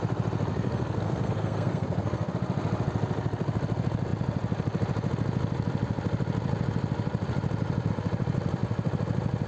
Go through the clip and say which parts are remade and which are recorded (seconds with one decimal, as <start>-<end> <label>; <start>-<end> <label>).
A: 0.0-0.5 recorded; 0.5-2.3 remade; 2.3-9.5 recorded